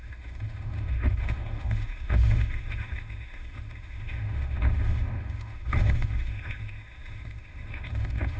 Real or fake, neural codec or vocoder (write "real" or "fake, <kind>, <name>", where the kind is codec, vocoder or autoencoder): fake, autoencoder, DAC-VAE